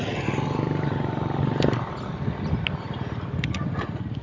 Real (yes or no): yes